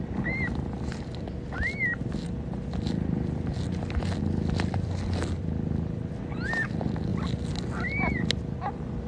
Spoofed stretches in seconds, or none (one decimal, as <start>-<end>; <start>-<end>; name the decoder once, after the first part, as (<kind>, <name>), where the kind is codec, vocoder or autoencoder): none